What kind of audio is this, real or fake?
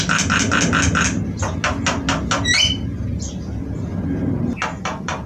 real